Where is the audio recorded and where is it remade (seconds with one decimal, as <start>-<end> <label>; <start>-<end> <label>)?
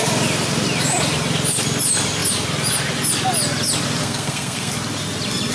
0.0-4.0 recorded; 4.0-4.7 remade; 4.7-5.5 recorded